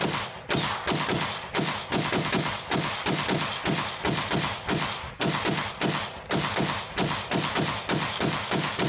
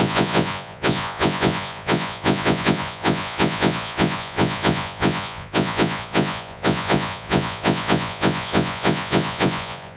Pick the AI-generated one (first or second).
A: second